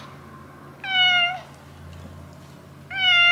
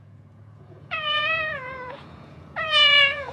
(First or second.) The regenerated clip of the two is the second